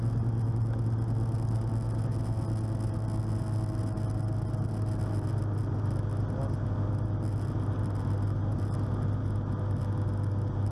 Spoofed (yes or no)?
no